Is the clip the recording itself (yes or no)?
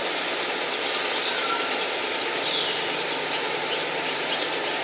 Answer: yes